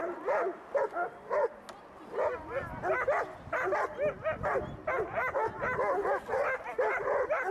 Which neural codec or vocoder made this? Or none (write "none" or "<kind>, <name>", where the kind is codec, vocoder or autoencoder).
none